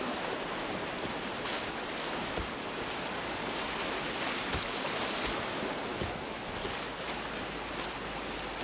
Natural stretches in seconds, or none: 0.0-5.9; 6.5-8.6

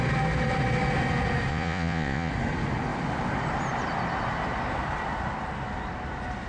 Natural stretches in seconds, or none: 0.0-1.5; 2.3-6.5

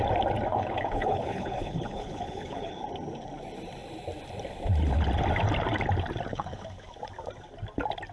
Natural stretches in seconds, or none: 0.0-0.5; 2.8-6.3; 7.0-8.1

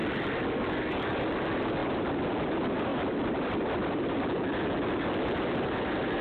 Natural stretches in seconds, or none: 0.7-1.8; 2.3-2.9; 4.2-6.2

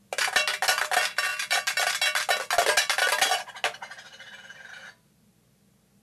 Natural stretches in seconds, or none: 0.0-6.0

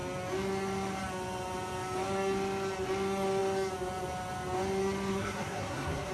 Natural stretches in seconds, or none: 0.0-5.1

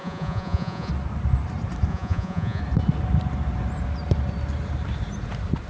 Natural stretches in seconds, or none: 0.9-1.9; 2.6-5.7